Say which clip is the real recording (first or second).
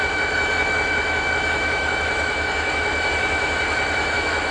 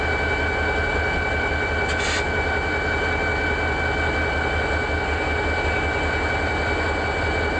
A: second